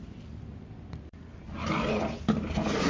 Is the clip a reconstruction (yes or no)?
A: no